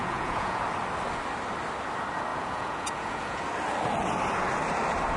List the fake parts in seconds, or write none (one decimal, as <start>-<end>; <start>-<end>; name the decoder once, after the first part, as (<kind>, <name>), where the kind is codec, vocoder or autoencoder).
0.0-0.6 (vocoder, Vocos); 2.3-3.4